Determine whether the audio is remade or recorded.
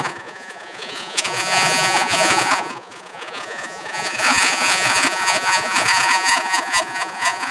remade